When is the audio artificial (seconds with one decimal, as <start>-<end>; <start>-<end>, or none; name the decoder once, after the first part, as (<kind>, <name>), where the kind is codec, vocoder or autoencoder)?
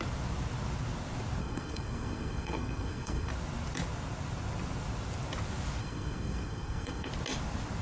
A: 1.4-3.3 (codec, SNAC); 5.8-7.1